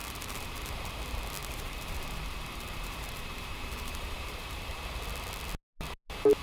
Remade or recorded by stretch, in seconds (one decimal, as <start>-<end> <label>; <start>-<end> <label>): 0.0-0.9 remade; 0.9-1.4 recorded; 1.4-4.8 remade; 4.8-6.4 recorded